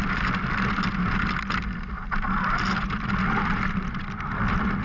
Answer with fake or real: real